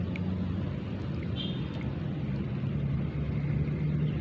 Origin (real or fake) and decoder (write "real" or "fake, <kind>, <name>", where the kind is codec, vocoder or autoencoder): real